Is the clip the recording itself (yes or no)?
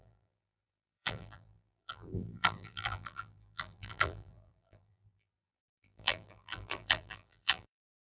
no